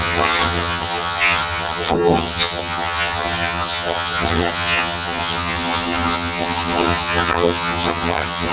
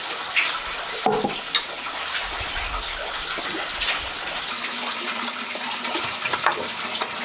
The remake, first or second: first